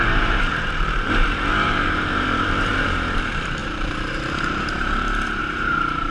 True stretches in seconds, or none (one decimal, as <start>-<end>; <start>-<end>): none